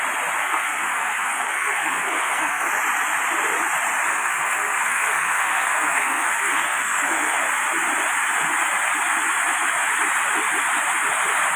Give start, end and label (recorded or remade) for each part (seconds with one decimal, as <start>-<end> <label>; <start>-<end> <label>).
0.0-0.4 recorded; 0.4-2.7 remade; 2.7-4.1 recorded; 4.1-7.4 remade; 7.4-11.6 recorded